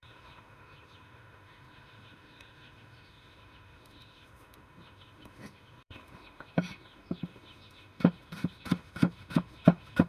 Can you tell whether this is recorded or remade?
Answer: remade